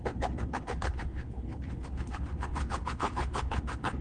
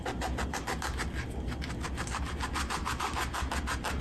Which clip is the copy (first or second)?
first